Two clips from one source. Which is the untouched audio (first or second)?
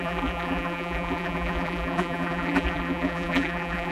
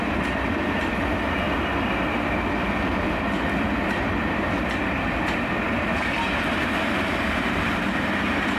second